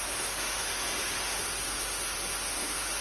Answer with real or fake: fake